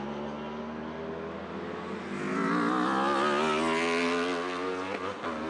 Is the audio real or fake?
real